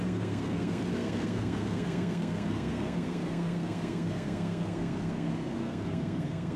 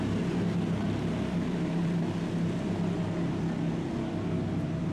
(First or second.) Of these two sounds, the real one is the second